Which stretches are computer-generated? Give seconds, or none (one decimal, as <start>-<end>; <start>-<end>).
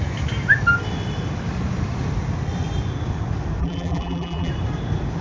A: 3.6-4.5